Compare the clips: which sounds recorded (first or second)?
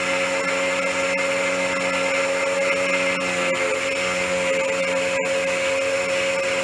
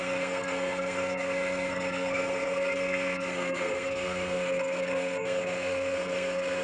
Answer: first